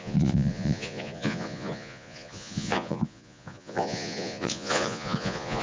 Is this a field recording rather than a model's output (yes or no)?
no